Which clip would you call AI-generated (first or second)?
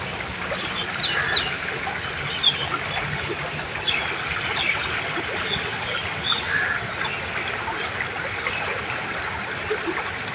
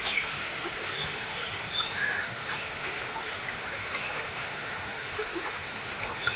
second